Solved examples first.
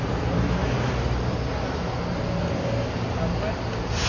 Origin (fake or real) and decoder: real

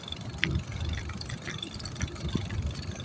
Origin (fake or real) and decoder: real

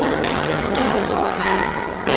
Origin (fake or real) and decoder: fake, vocoder, HiFi-GAN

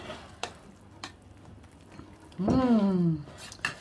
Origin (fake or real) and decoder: real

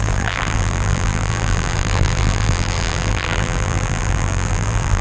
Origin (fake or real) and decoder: fake, vocoder, BigVGAN v2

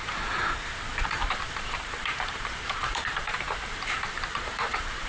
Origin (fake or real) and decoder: fake, vocoder, BigVGAN v2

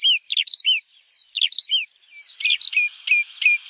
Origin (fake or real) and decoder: real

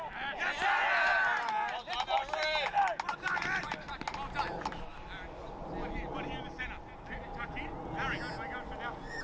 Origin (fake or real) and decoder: real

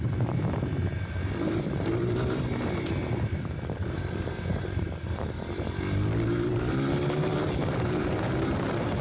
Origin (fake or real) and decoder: fake, vocoder, BigVGAN v2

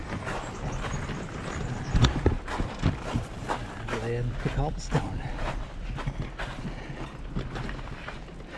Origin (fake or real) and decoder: real